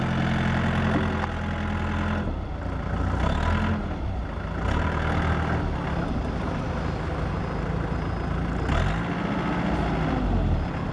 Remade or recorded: recorded